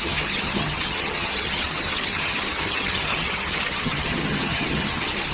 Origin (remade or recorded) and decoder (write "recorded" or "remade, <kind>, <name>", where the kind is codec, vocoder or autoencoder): remade, vocoder, HiFi-GAN